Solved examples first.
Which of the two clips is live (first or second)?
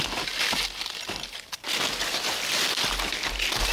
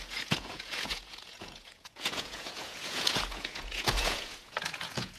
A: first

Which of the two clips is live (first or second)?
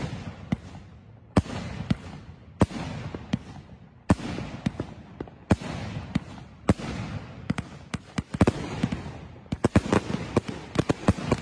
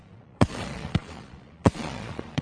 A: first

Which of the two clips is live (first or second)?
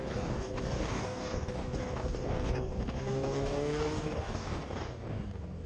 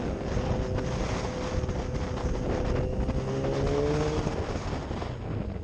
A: second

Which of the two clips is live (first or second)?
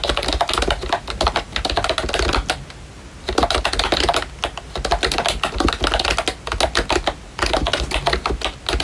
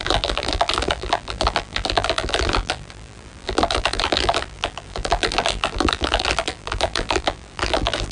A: first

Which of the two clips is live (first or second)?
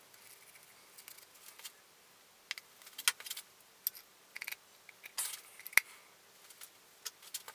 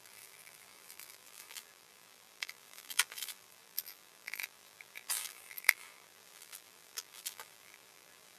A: first